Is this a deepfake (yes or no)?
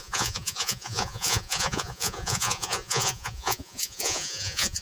yes